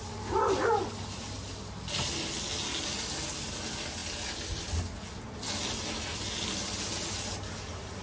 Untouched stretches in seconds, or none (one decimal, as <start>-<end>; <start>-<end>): 0.0-8.0